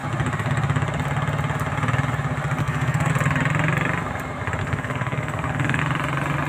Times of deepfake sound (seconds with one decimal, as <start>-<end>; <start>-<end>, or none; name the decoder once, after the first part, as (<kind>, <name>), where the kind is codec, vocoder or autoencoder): 2.6-3.1 (codec, SNAC); 4.6-5.8